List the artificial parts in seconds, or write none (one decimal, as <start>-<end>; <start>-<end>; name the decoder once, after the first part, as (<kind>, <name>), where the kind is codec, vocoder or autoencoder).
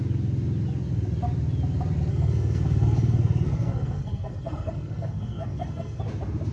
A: 2.1-6.0 (codec, SNAC)